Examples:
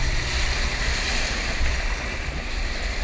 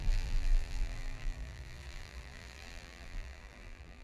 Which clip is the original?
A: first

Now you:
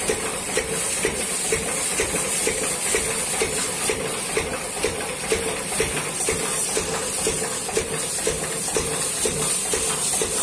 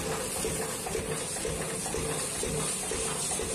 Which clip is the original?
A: second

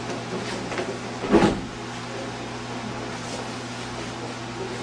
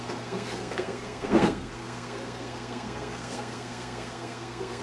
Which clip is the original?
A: first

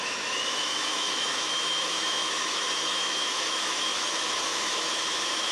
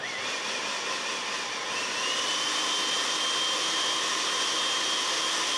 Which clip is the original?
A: second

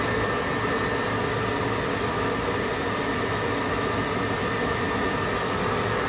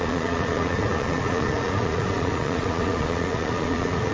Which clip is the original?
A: first